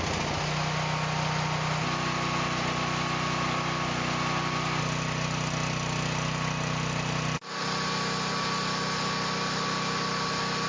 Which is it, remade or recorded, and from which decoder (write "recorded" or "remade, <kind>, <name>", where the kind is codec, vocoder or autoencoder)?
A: recorded